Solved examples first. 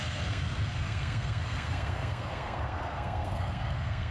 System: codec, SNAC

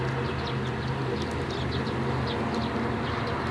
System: none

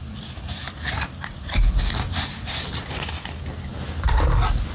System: none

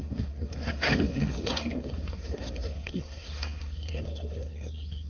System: codec, SNAC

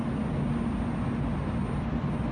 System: none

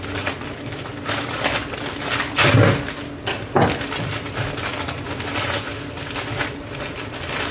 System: none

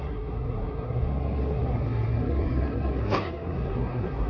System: codec, SNAC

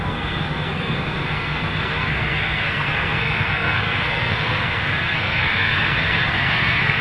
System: codec, SNAC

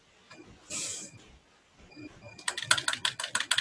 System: none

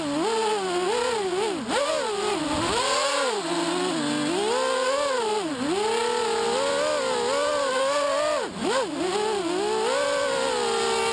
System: none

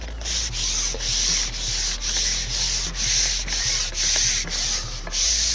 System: none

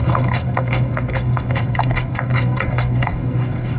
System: codec, SNAC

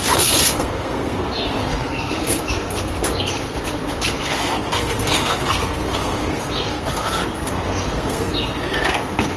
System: codec, SNAC